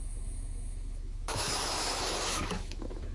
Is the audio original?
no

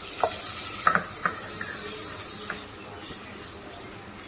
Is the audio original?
yes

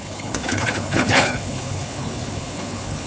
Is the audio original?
no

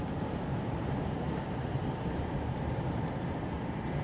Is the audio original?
no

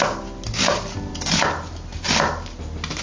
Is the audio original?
yes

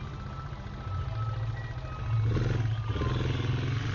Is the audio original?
yes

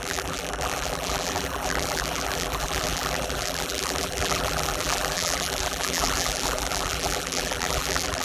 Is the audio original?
no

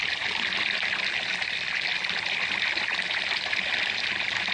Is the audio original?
yes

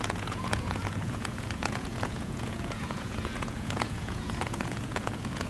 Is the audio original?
no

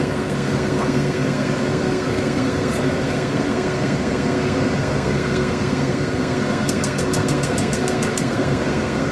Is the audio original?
no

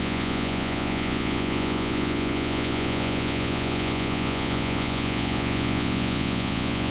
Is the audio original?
no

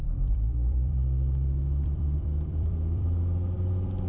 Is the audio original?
no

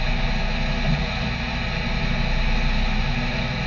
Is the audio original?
yes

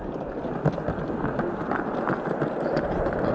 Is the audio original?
yes